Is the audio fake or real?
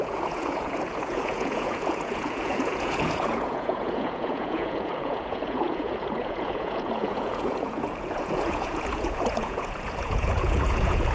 fake